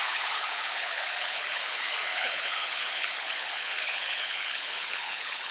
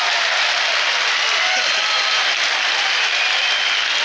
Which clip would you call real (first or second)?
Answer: second